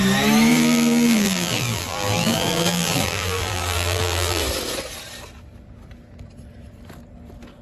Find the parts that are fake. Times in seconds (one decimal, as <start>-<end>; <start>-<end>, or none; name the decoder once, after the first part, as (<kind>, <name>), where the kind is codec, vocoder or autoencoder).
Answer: 0.5-4.4 (vocoder, BigVGAN v2)